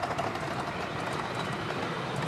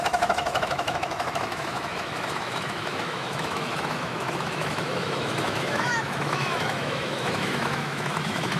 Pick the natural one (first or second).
first